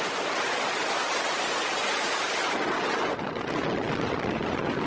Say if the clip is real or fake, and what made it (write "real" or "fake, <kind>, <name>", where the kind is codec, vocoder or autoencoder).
real